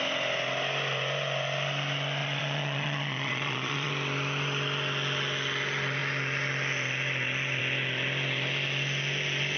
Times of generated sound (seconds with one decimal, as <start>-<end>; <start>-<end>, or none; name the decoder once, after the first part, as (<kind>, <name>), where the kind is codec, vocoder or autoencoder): 2.2-3.9 (vocoder, Vocos)